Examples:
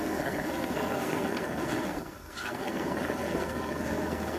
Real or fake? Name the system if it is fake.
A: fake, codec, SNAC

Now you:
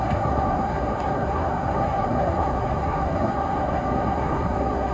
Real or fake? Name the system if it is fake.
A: fake, codec, SNAC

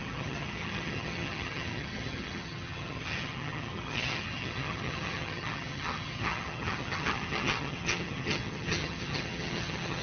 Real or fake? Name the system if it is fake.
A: fake, vocoder, HiFi-GAN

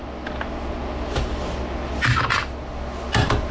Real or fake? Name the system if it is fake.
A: real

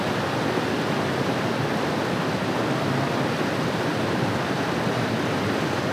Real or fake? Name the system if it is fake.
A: real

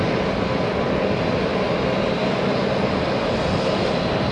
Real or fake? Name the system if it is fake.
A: real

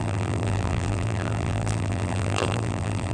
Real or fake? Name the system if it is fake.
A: fake, vocoder, BigVGAN v2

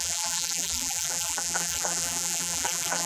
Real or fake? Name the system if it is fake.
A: fake, vocoder, BigVGAN v2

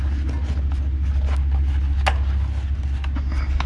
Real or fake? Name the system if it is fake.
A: real